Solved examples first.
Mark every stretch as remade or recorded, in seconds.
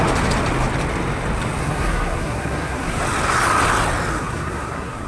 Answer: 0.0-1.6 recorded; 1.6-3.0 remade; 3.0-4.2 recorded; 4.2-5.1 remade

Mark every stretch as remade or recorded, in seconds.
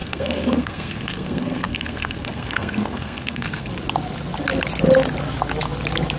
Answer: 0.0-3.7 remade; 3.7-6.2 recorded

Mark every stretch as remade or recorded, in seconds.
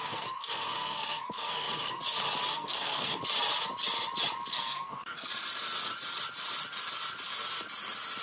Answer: 0.0-2.0 remade; 2.0-2.5 recorded; 2.5-3.2 remade; 3.2-4.5 recorded; 4.5-5.3 remade; 5.3-8.2 recorded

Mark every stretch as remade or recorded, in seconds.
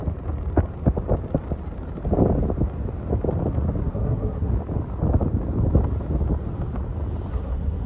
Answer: 0.0-3.8 recorded; 3.8-4.5 remade; 4.5-7.3 recorded; 7.3-7.9 remade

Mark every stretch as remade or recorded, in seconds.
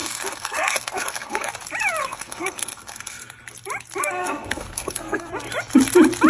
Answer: 0.0-1.5 remade; 1.5-2.0 recorded; 2.0-3.2 remade; 3.2-4.0 recorded; 4.0-5.3 remade; 5.3-6.3 recorded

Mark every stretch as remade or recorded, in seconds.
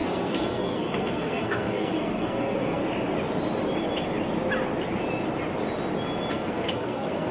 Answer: 0.0-2.8 remade; 2.8-6.3 recorded; 6.3-7.3 remade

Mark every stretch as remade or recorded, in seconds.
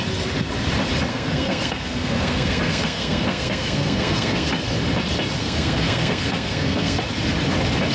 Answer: 0.0-1.1 recorded; 1.1-4.5 remade; 4.5-5.4 recorded; 5.4-7.0 remade; 7.0-7.9 recorded